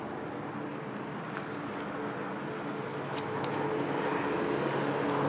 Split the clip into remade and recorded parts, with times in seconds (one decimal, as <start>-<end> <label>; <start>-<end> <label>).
0.0-2.9 recorded; 2.9-4.0 remade; 4.0-5.3 recorded